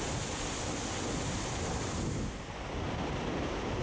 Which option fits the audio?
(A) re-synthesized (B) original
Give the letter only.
B